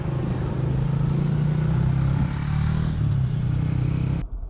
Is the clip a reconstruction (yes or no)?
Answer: no